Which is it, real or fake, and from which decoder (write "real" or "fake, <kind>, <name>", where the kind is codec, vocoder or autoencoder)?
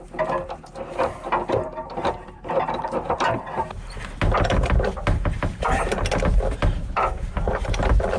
real